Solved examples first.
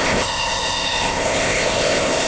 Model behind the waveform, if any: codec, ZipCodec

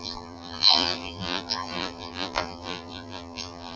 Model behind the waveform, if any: vocoder, BigVGAN v2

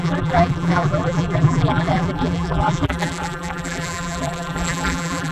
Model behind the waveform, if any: vocoder, BigVGAN v2